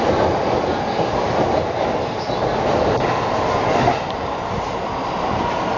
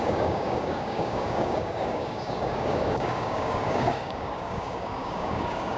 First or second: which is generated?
second